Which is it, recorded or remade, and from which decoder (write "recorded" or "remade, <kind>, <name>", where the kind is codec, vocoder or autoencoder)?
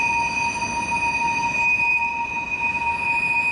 recorded